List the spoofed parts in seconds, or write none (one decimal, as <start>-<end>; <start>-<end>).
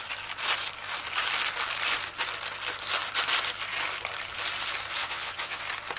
5.0-5.6